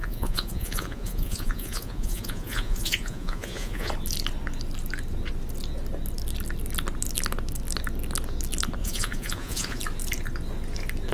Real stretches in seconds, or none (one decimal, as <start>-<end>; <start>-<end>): 3.9-8.8; 9.8-11.1